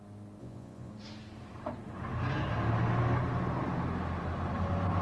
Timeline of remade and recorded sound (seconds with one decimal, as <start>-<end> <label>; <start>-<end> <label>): 0.0-0.4 recorded; 0.4-0.9 remade; 0.9-5.0 recorded